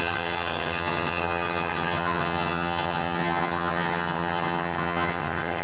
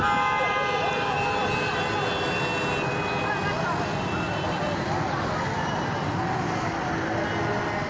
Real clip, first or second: second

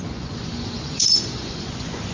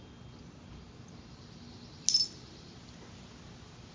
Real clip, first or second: second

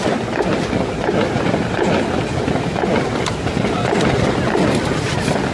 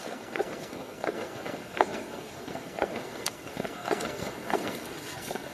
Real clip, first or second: first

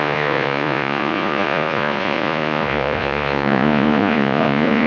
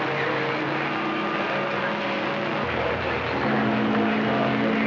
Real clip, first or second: second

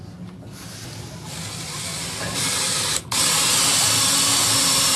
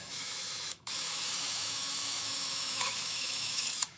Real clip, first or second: first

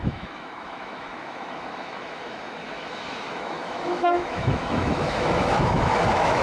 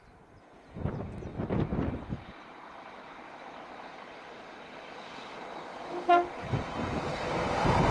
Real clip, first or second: second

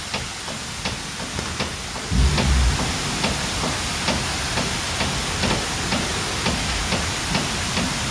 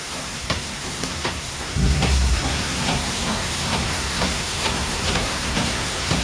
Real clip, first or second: first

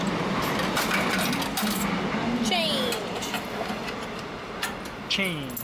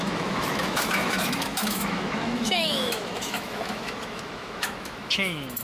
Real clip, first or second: first